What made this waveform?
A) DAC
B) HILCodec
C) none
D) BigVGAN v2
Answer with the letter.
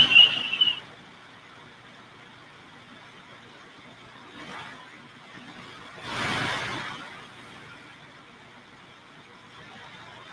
C